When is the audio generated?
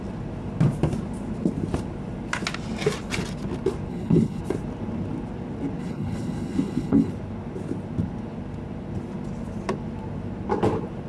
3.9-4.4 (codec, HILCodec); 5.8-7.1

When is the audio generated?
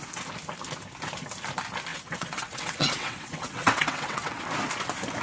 1.9-4.4 (vocoder, WaveNeXt)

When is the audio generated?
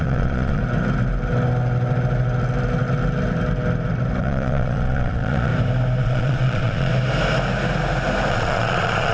0.0-0.6 (vocoder, Vocos); 4.2-5.5; 6.0-6.9; 8.3-9.1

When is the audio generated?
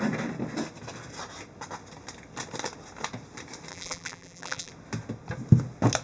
3.7-4.7 (vocoder, BigVGAN v2)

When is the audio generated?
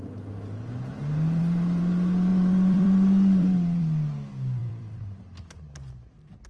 1.4-1.9 (vocoder, BigVGAN v2); 2.3-3.8; 4.6-5.2